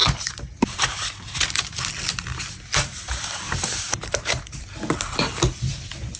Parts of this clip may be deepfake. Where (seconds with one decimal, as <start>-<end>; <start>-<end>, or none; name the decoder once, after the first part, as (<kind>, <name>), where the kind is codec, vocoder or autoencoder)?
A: 0.0-1.8 (vocoder, BigVGAN v2); 2.7-4.6